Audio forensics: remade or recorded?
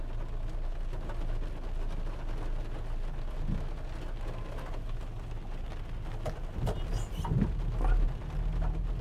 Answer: recorded